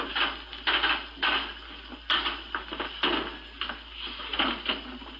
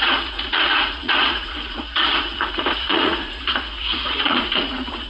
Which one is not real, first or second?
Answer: second